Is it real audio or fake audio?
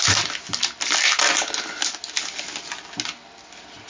real